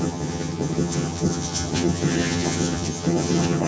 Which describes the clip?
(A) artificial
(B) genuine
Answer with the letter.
A